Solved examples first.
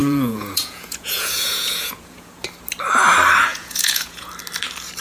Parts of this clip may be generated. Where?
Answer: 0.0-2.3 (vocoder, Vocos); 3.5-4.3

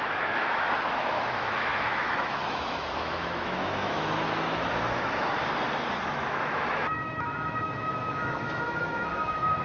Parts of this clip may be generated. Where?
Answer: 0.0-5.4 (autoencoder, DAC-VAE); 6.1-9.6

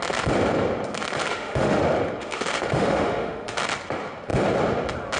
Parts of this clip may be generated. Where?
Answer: 1.3-1.8 (autoencoder, DAC-VAE); 2.2-3.6